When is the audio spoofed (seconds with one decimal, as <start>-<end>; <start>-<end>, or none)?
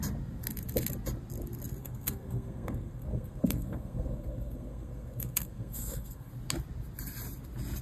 1.8-6.3